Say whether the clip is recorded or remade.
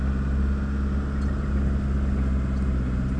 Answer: recorded